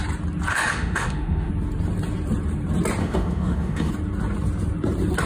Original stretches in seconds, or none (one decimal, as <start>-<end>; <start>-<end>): 0.0-0.5; 1.5-3.0; 3.9-5.3